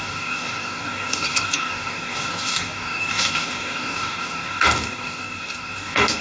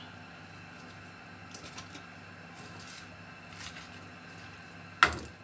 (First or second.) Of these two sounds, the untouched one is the second